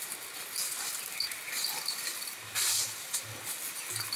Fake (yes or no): no